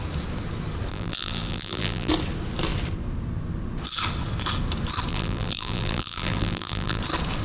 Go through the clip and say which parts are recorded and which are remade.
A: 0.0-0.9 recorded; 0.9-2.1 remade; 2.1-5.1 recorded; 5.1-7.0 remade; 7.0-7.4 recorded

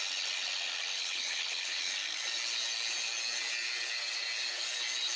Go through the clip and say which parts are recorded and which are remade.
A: 0.0-0.9 recorded; 0.9-1.8 remade; 1.8-5.2 recorded

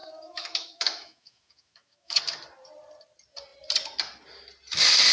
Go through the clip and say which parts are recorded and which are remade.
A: 0.0-2.2 remade; 2.2-5.1 recorded